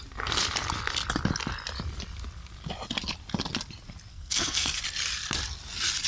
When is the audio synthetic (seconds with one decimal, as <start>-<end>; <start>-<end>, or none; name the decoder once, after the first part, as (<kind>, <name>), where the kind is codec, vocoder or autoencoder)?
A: 4.1-4.8 (codec, SNAC)